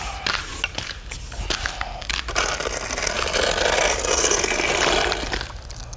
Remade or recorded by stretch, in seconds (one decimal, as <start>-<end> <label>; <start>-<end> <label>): 0.0-6.0 recorded